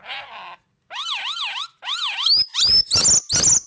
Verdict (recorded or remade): recorded